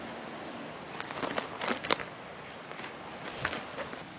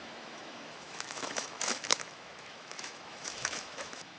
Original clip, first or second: first